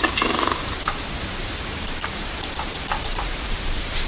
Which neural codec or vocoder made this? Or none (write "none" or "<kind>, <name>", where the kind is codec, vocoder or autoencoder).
vocoder, BigVGAN v2